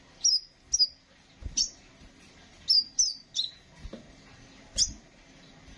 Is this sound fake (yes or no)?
no